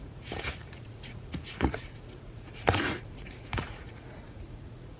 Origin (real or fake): fake